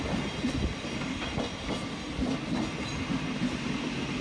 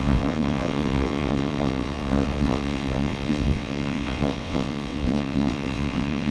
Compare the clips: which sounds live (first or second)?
first